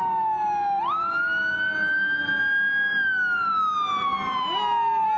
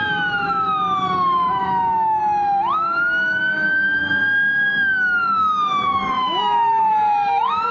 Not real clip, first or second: second